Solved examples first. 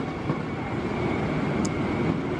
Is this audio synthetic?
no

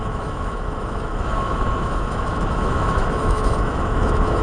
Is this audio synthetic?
yes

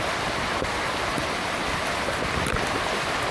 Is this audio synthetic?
no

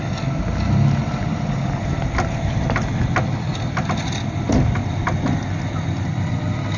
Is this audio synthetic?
no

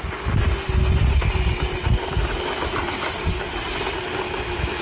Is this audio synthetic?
no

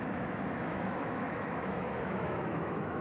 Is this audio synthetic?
yes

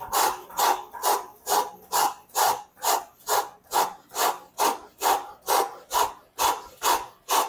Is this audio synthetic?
no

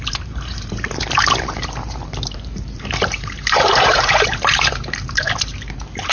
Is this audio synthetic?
yes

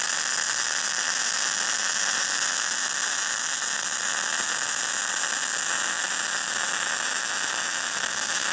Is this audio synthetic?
no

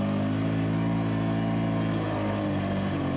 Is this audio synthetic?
no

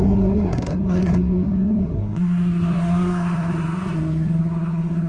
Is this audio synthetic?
yes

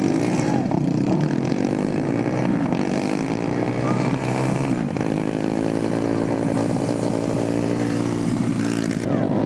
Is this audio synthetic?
yes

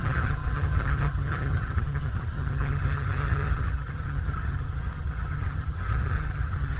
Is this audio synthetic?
yes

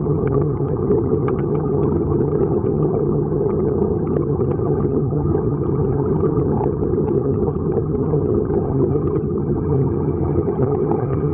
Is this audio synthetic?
yes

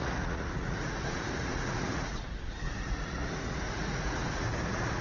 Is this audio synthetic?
yes